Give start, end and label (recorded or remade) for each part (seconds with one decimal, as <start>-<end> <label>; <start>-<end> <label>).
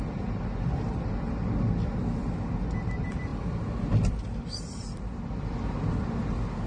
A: 0.0-6.7 recorded